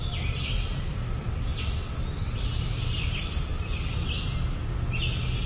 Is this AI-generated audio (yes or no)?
no